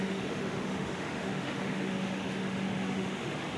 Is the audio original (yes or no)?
no